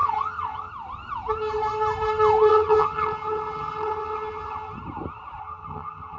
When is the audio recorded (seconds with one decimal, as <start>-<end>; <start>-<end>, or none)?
0.7-2.5; 4.7-5.4